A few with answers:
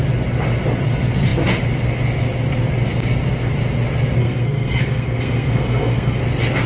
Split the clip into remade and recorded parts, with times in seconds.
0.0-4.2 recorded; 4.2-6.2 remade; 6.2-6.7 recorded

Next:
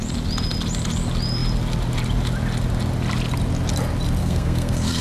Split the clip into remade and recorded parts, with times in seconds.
0.0-4.2 recorded; 4.2-5.0 remade

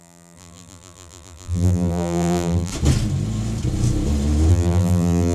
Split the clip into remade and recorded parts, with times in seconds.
0.0-2.7 remade; 2.7-4.5 recorded; 4.5-5.3 remade

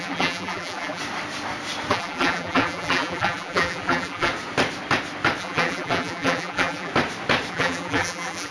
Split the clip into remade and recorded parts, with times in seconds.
0.0-1.0 remade; 1.0-1.9 recorded; 1.9-4.3 remade; 4.3-5.4 recorded; 5.4-6.9 remade; 6.9-7.5 recorded; 7.5-8.5 remade

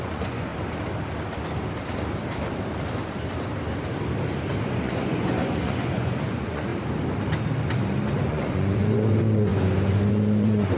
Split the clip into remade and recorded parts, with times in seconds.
0.0-0.5 remade; 0.5-4.6 recorded; 4.6-6.7 remade; 6.7-8.3 recorded; 8.3-9.5 remade; 9.5-10.1 recorded; 10.1-10.8 remade